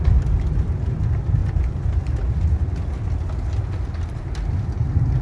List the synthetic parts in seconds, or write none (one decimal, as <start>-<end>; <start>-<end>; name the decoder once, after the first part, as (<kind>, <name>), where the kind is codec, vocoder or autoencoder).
none